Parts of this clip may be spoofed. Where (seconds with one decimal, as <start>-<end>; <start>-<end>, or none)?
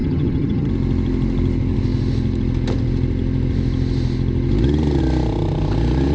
0.0-0.7